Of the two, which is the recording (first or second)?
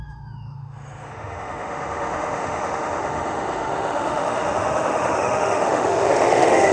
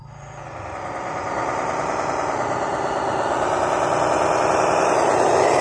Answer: second